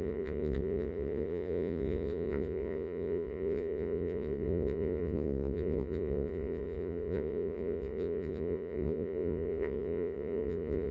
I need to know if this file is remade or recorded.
remade